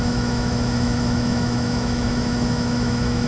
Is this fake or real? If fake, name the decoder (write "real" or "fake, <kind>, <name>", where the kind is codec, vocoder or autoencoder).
fake, autoencoder, DAC-VAE